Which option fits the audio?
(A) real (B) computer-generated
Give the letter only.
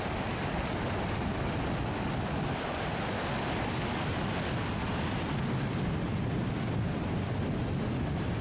A